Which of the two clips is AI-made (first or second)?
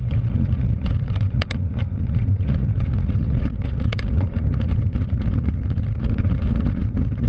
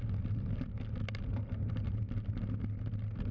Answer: first